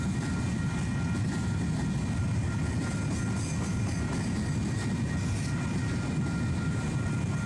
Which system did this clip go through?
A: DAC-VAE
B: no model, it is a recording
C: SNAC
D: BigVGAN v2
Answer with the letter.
B